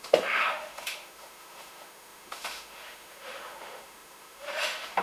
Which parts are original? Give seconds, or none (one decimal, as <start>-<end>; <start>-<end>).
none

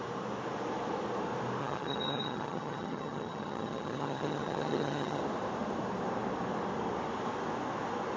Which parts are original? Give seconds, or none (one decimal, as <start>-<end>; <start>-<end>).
0.0-1.6; 5.2-8.2

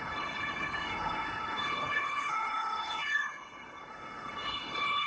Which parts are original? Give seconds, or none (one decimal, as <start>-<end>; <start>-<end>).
none

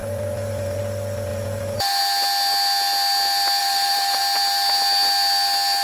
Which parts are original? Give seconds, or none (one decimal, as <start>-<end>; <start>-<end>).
0.8-1.3; 2.0-3.6; 4.2-5.8

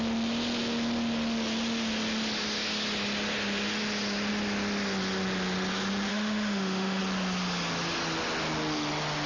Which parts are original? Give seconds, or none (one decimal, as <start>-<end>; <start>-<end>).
0.0-6.1; 7.0-9.3

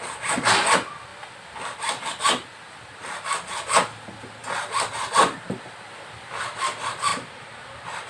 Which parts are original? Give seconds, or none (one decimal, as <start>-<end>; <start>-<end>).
0.0-1.1; 2.1-4.4; 4.9-7.1

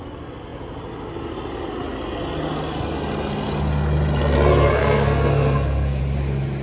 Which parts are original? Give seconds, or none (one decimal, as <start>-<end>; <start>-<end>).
0.0-4.5; 6.0-6.6